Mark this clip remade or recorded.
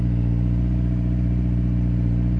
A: remade